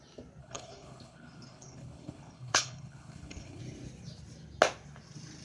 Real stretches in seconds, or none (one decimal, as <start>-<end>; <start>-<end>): 0.0-0.4; 3.6-5.4